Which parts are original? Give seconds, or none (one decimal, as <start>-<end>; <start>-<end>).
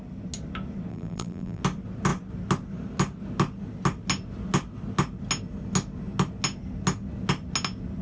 0.0-0.9; 1.6-8.0